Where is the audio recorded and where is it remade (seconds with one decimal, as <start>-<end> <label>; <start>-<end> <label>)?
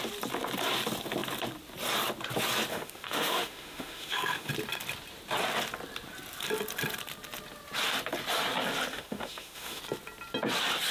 0.0-2.7 recorded; 2.7-4.5 remade; 4.5-8.9 recorded; 8.9-9.8 remade; 9.8-10.9 recorded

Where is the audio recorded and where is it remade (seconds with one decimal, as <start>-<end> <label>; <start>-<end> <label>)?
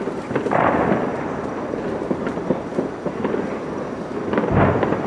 0.0-1.1 recorded; 1.1-3.3 remade; 3.3-5.1 recorded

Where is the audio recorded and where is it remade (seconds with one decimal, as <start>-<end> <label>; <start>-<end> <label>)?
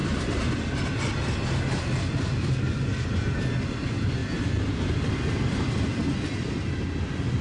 0.0-7.4 recorded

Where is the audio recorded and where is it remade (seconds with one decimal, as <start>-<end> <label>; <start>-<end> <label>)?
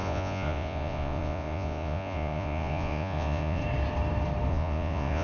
0.0-3.6 remade; 3.6-4.5 recorded; 4.5-5.2 remade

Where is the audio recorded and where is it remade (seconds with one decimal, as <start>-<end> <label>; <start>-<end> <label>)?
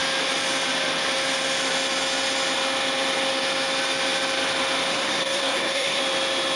0.0-4.9 recorded; 4.9-6.0 remade; 6.0-6.6 recorded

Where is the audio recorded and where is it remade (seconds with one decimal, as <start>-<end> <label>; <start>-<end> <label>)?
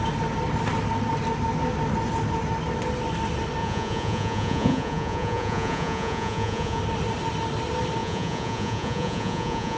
0.0-3.6 recorded; 3.6-6.8 remade; 6.8-8.0 recorded; 8.0-9.8 remade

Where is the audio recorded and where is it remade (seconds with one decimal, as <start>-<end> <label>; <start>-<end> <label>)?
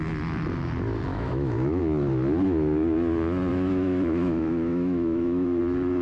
0.0-1.1 recorded; 1.1-1.8 remade; 1.8-3.5 recorded; 3.5-5.6 remade; 5.6-6.0 recorded